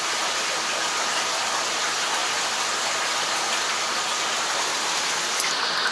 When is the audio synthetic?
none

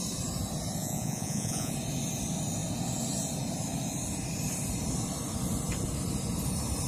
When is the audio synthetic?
0.8-1.7

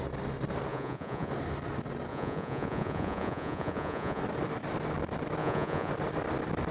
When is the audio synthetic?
0.7-1.3; 2.1-4.2; 5.4-5.9

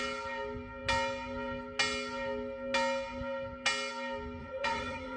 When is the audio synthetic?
4.4-5.2

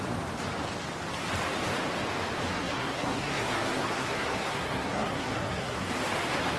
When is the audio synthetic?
2.5-5.9

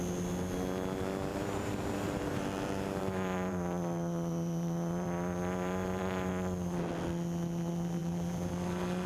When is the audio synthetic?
1.3-6.3; 8.0-8.5

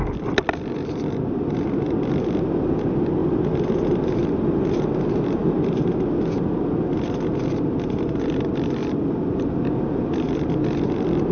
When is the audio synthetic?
none

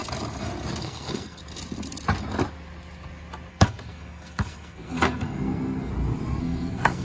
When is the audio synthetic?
0.8-1.4; 3.5-5.9; 6.4-7.0